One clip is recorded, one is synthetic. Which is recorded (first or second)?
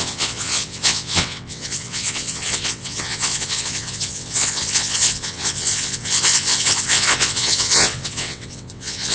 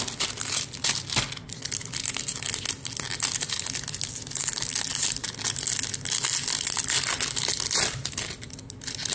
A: second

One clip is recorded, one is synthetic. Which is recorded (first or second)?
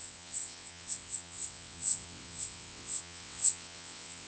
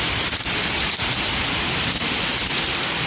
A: second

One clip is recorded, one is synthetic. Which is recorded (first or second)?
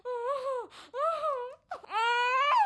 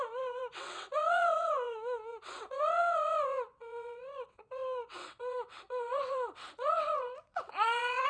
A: first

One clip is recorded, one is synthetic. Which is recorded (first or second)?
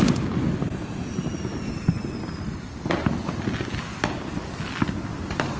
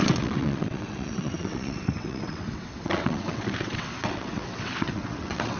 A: first